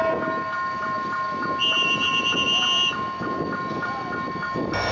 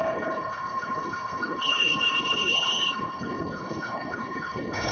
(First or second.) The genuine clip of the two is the first